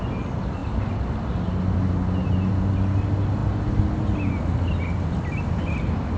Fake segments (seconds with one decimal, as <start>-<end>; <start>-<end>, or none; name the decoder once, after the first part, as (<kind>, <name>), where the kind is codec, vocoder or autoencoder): none